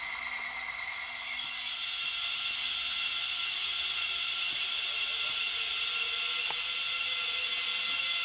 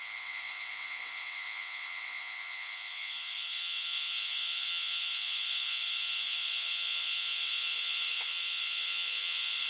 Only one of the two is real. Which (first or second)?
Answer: first